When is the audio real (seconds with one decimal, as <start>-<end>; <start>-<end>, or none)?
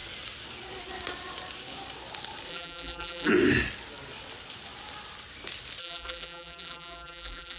0.0-2.5; 3.3-5.8